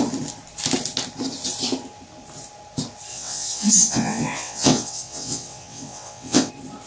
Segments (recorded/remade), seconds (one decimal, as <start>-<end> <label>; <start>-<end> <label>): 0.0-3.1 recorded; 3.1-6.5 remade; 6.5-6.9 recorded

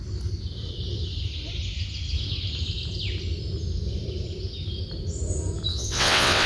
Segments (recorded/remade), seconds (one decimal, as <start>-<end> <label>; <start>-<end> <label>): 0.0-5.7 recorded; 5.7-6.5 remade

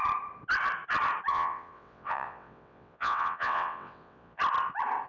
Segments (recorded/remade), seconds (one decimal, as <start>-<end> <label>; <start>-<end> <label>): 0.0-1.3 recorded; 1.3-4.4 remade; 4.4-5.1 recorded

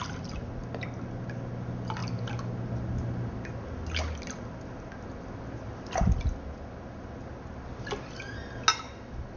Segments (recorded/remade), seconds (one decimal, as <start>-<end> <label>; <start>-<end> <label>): 0.0-9.4 recorded

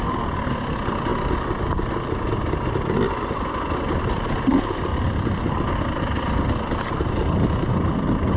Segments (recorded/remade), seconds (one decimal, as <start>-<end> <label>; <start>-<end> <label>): 0.0-8.4 recorded

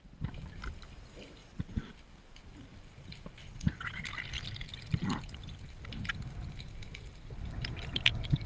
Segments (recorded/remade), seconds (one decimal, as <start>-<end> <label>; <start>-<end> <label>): 0.0-1.4 recorded; 1.4-1.9 remade; 1.9-3.4 recorded; 3.4-4.0 remade; 4.0-8.5 recorded

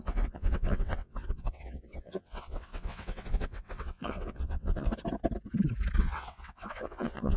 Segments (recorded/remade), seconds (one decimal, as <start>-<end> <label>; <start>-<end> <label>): 0.0-4.9 remade; 4.9-6.0 recorded; 6.0-7.4 remade